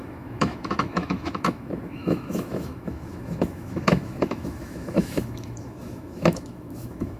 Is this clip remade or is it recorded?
remade